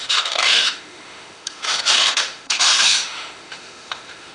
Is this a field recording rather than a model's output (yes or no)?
no